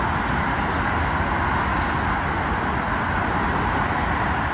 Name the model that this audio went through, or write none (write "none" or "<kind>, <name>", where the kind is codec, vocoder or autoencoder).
none